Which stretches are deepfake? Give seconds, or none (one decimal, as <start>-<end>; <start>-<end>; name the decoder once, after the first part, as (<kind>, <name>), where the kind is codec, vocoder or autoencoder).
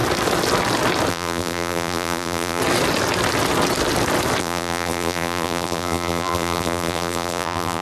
1.1-2.6 (vocoder, BigVGAN v2); 4.4-7.8